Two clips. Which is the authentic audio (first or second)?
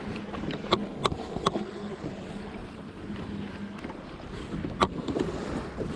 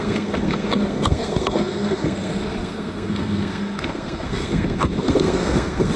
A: first